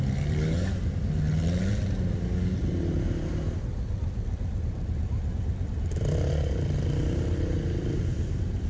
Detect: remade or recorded recorded